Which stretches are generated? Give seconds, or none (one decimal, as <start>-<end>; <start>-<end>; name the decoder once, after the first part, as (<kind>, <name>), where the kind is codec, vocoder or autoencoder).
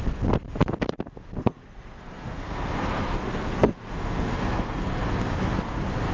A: 1.4-5.1 (codec, SNAC)